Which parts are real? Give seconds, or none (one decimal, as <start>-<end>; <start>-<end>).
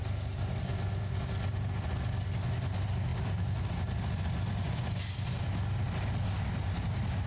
0.0-7.3